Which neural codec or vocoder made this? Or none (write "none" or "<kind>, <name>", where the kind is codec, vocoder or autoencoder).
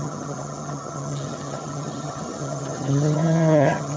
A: vocoder, HiFi-GAN